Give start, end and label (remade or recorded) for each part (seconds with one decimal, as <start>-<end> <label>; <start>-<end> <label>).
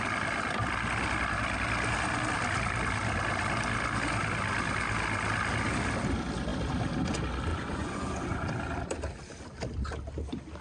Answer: 0.0-7.5 recorded; 7.5-8.5 remade; 8.5-10.6 recorded